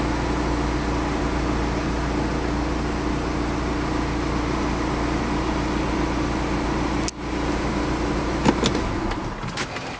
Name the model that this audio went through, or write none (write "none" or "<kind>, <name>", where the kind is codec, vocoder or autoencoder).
none